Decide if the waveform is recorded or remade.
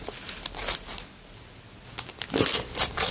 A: recorded